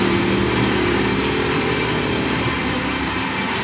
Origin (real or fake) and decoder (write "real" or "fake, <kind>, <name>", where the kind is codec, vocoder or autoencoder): fake, vocoder, BigVGAN v2